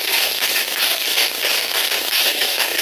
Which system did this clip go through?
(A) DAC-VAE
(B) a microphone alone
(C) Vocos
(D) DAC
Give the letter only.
D